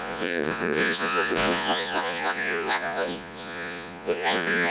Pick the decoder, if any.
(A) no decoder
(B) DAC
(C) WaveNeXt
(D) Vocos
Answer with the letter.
D